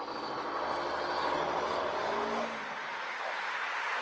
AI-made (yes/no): no